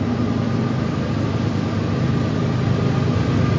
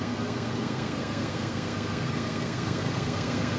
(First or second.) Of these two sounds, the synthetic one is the second